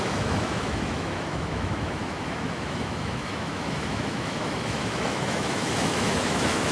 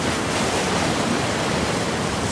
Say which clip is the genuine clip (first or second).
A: second